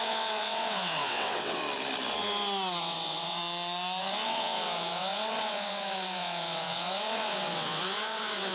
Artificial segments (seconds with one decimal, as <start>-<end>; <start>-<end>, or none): 0.0-1.6; 2.8-3.4; 4.0-8.5